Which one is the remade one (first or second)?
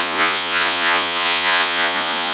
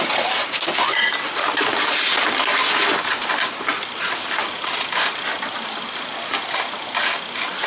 first